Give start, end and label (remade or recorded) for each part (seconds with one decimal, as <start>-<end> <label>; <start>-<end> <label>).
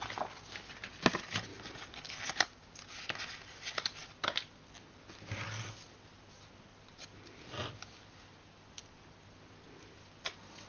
0.0-10.7 recorded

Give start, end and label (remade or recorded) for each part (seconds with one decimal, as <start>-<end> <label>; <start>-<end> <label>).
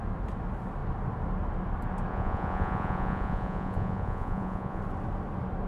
0.0-2.1 recorded; 2.1-4.8 remade; 4.8-5.7 recorded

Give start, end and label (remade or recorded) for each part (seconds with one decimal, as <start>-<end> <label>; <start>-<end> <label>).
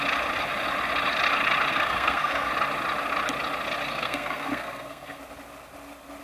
0.0-1.7 recorded; 1.7-2.5 remade; 2.5-3.9 recorded; 3.9-5.2 remade; 5.2-6.2 recorded